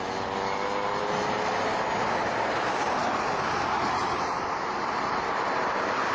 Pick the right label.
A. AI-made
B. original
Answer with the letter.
B